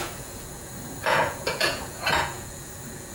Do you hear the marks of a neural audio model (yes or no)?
yes